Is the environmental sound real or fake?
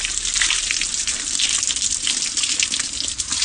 real